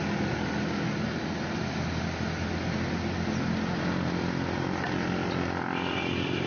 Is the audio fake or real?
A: real